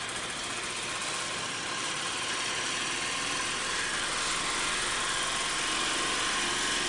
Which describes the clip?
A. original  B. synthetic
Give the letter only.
A